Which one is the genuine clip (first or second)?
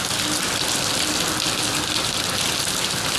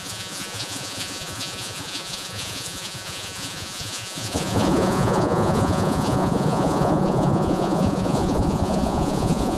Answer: first